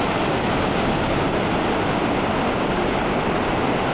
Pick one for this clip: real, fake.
real